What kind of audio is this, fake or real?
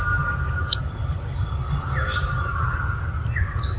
real